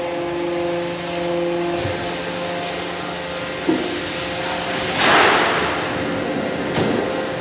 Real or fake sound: real